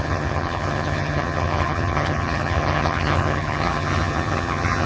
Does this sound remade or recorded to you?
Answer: remade